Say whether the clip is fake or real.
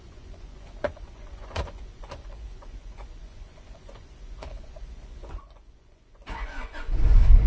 fake